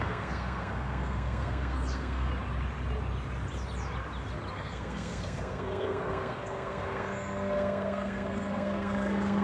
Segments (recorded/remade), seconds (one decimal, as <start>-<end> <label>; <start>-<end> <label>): 0.0-2.3 remade; 2.3-4.5 recorded; 4.5-9.4 remade